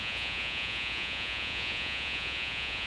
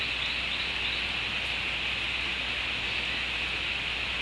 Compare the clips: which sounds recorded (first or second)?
second